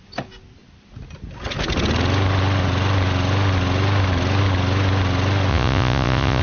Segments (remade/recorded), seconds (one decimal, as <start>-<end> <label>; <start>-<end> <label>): 0.0-5.5 recorded; 5.5-6.4 remade